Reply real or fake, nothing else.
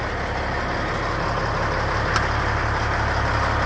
real